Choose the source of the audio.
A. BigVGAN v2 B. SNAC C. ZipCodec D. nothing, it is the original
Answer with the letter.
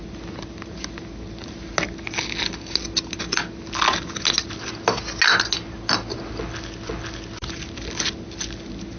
D